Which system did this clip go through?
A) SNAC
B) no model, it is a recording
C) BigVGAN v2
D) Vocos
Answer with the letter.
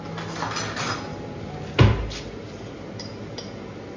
B